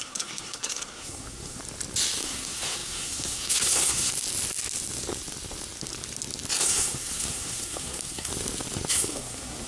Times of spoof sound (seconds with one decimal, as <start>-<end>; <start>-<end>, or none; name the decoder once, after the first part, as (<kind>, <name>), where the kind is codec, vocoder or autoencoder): 0.0-1.6 (codec, SNAC); 2.2-4.1; 6.6-8.3; 8.9-9.7